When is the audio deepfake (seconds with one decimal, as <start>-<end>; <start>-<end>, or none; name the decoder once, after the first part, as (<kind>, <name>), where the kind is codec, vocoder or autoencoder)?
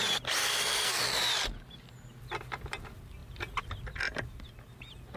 0.4-1.0 (codec, SNAC)